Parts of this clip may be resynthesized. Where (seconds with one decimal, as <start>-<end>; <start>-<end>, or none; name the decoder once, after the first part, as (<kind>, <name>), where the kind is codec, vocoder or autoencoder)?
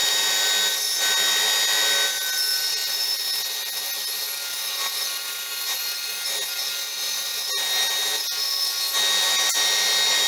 none